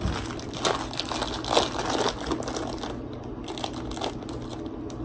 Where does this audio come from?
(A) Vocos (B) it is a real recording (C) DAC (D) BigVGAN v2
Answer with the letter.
B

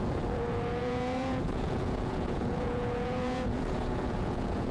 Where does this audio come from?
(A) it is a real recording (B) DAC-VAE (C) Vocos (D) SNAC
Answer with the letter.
C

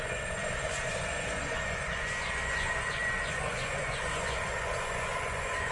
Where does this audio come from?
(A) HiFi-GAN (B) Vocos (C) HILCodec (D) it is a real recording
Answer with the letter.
B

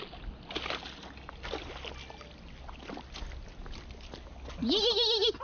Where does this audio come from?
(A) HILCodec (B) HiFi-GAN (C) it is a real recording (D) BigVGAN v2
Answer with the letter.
C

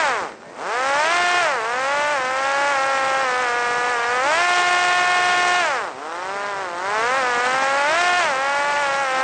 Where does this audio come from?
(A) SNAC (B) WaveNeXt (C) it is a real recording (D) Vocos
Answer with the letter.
C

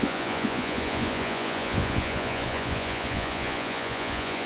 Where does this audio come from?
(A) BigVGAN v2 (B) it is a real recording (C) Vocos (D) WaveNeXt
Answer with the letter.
C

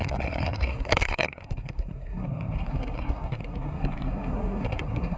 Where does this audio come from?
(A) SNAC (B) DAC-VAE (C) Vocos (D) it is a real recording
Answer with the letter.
A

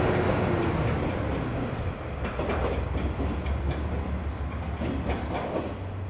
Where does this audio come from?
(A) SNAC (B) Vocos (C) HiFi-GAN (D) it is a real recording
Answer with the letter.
D